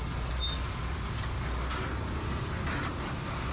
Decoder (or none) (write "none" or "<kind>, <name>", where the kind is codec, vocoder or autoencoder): none